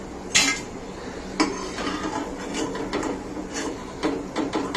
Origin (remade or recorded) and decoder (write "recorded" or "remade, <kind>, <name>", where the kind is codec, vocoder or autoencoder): recorded